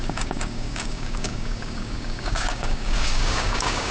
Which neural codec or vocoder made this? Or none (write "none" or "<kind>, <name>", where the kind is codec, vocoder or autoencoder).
codec, DAC